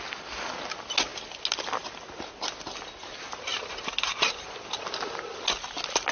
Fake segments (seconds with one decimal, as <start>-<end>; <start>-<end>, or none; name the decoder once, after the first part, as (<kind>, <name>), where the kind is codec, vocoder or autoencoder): none